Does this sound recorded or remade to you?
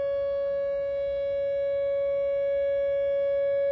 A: recorded